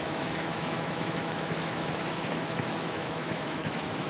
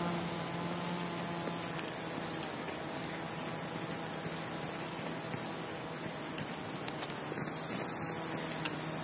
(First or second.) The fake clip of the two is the first